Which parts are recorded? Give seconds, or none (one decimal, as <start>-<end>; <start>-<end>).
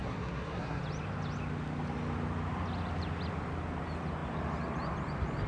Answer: 0.8-5.5